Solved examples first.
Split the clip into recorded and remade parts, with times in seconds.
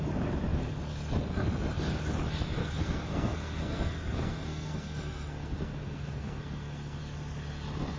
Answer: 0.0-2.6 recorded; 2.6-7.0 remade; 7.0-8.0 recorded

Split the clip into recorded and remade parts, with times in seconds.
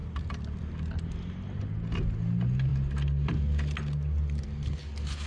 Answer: 0.0-5.3 recorded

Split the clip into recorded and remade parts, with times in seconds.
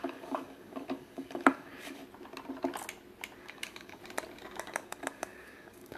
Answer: 0.0-2.0 remade; 2.0-3.4 recorded; 3.4-4.0 remade; 4.0-4.6 recorded; 4.6-6.0 remade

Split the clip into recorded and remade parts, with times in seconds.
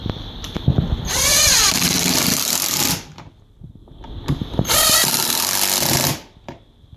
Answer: 0.0-3.8 remade; 3.8-4.9 recorded; 4.9-7.0 remade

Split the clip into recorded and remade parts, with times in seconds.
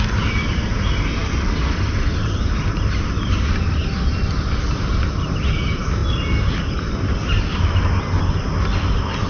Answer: 0.0-1.2 recorded; 1.2-3.6 remade; 3.6-9.3 recorded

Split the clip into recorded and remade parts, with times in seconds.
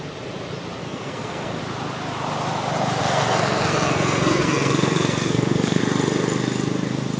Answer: 0.0-0.8 recorded; 0.8-1.6 remade; 1.6-3.0 recorded; 3.0-5.8 remade; 5.8-7.2 recorded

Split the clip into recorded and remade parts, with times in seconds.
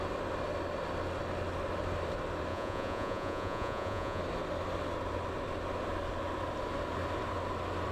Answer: 0.0-2.5 recorded; 2.5-4.2 remade; 4.2-7.9 recorded